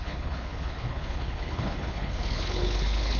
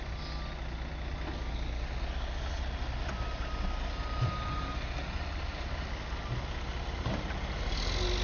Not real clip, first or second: first